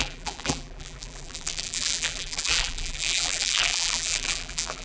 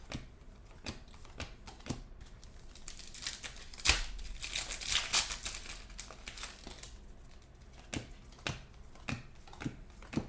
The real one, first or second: second